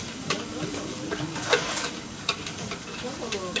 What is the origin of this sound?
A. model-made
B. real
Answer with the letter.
A